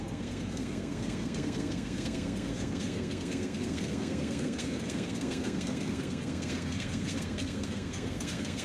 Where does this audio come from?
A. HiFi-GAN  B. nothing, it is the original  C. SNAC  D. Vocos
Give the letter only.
C